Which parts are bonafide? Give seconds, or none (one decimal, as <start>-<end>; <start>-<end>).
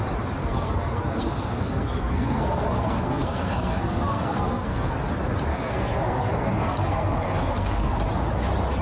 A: 0.0-0.4; 4.9-5.5; 8.0-8.8